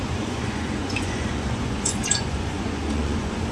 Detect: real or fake fake